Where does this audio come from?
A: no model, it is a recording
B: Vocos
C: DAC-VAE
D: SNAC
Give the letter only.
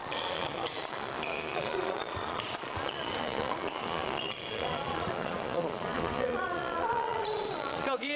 B